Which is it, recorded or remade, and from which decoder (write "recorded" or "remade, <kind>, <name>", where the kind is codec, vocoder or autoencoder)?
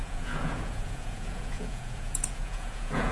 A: remade, vocoder, Vocos